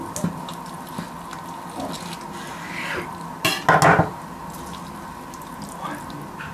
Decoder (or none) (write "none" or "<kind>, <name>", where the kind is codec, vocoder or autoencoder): none